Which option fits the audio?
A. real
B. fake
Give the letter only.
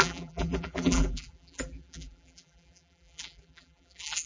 B